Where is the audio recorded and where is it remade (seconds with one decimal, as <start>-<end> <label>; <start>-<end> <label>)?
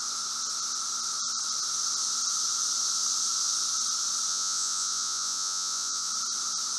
0.0-4.3 recorded; 4.3-6.1 remade; 6.1-6.8 recorded